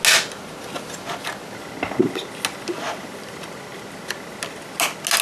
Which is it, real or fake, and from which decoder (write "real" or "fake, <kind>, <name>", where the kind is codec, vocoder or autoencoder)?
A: real